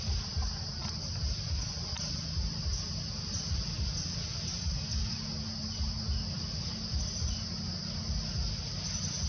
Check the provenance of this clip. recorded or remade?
recorded